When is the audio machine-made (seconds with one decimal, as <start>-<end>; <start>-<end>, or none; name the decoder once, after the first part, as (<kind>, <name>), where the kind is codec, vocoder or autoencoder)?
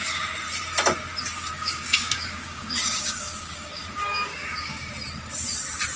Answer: 1.5-4.9 (codec, DAC)